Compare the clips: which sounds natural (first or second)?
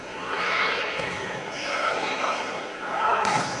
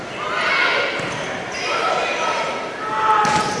second